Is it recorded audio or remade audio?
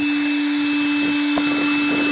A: recorded